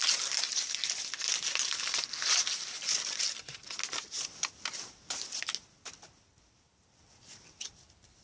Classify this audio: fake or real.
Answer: real